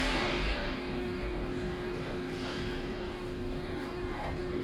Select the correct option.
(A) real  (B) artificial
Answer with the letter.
B